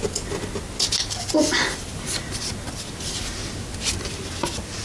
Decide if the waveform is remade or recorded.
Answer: recorded